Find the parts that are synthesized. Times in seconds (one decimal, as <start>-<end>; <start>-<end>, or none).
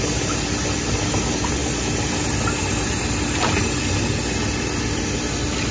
none